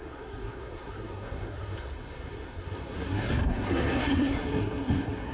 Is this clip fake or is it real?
fake